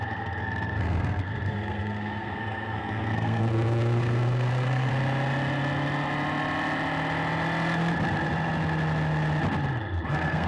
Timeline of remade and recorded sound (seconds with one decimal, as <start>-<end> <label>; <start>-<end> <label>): 0.0-4.9 remade; 4.9-10.1 recorded; 10.1-10.5 remade